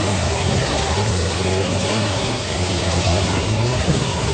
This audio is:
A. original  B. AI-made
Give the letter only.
B